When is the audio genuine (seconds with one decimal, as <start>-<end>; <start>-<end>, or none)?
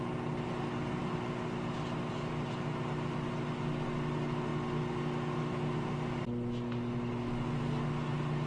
0.0-8.5